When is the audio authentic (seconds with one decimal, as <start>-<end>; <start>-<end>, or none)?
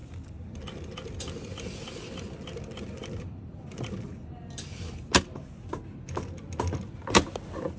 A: 2.8-7.8